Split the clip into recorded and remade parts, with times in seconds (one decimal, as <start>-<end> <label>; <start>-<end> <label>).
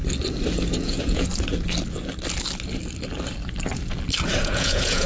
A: 0.0-0.8 recorded; 0.8-1.3 remade; 1.3-4.4 recorded; 4.4-5.1 remade